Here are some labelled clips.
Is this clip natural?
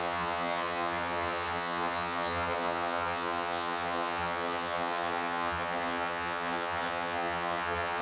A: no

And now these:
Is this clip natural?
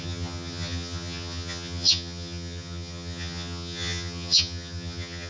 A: no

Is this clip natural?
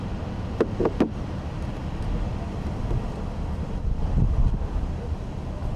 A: yes